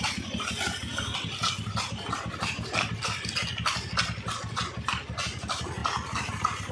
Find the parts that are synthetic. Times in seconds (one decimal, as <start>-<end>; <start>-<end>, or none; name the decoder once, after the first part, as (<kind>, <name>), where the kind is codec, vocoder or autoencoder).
none